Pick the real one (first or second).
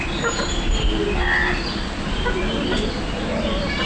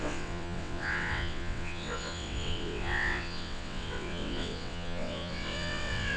first